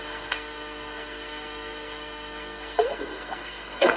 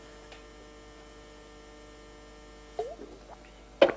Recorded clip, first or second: second